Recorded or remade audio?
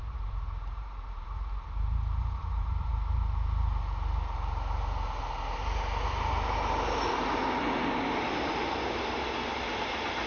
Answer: recorded